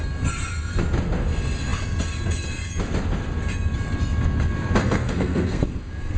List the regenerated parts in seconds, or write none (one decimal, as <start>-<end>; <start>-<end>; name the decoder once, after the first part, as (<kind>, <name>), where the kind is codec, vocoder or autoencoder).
4.8-6.2 (codec, SNAC)